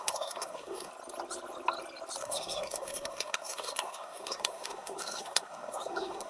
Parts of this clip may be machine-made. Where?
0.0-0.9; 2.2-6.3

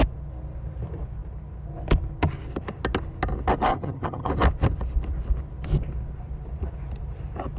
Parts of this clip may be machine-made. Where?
3.7-4.3